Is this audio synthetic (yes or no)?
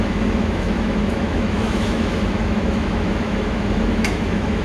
yes